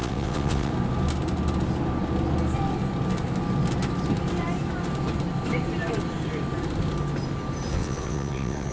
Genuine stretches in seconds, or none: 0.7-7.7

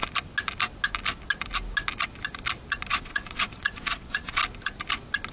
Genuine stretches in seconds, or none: 0.0-2.9; 4.4-5.3

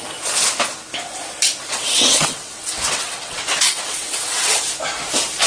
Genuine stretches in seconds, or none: 0.0-1.7; 4.6-5.5

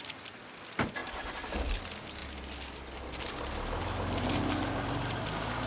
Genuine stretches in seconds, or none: 0.0-5.7

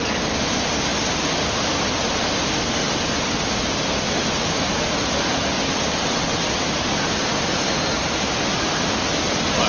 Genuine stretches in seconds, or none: 0.0-5.9; 6.5-9.7

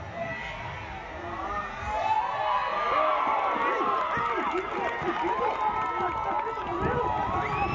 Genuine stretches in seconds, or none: 0.0-7.7

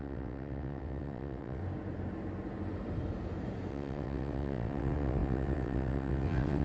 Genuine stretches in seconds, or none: 1.6-3.7

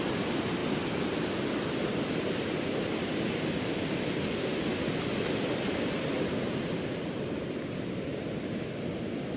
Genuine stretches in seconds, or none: 0.0-9.4